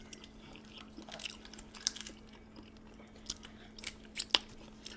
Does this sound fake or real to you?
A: real